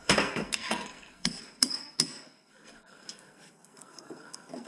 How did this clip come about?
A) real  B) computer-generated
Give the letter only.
B